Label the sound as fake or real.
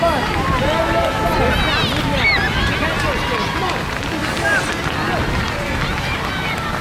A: real